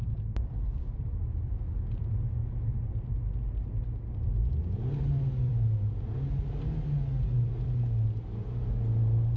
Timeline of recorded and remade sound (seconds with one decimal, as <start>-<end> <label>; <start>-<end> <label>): 0.0-0.4 recorded; 0.4-1.6 remade; 1.6-9.4 recorded